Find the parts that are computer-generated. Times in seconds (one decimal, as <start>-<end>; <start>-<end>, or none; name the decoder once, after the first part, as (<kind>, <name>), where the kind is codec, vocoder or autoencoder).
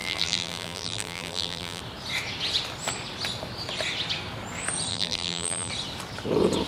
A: 0.0-1.8 (vocoder, BigVGAN v2); 4.9-5.7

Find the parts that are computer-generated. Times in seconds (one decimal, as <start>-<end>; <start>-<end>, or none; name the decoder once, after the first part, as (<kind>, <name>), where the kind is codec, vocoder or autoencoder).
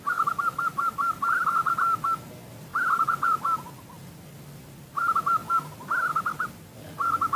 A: 5.4-6.1 (vocoder, BigVGAN v2)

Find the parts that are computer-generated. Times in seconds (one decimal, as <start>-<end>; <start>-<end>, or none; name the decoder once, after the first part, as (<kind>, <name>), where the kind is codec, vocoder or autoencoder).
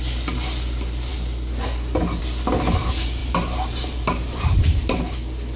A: 3.2-5.0 (vocoder, BigVGAN v2)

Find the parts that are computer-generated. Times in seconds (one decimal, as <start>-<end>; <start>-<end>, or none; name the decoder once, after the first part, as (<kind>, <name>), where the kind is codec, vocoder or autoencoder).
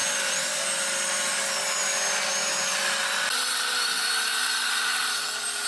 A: 0.0-0.6 (vocoder, BigVGAN v2)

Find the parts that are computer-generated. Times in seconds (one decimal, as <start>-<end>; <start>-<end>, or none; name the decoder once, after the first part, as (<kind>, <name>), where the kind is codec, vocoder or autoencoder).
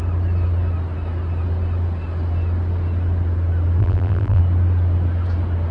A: 3.8-4.4 (vocoder, BigVGAN v2)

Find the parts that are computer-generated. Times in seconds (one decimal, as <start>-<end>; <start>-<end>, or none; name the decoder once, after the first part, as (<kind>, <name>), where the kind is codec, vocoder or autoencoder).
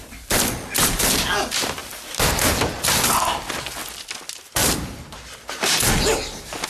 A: 4.6-5.8 (vocoder, BigVGAN v2)